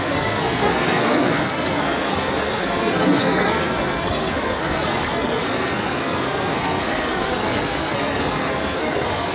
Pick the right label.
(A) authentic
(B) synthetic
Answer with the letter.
B